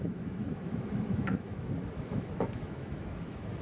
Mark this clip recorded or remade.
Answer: remade